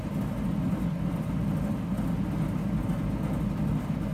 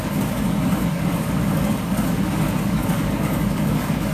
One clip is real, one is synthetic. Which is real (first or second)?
first